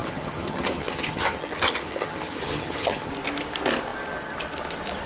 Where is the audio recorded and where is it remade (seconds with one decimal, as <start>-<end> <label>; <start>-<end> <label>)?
0.0-3.1 remade; 3.1-5.1 recorded